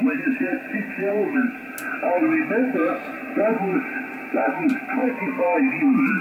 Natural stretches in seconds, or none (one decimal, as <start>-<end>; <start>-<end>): 0.0-6.2